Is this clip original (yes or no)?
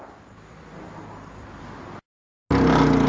yes